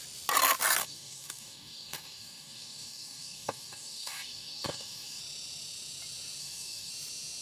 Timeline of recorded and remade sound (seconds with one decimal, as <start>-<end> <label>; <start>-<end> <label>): 0.0-0.8 recorded; 0.8-5.2 remade; 5.2-6.4 recorded; 6.4-6.9 remade; 6.9-7.4 recorded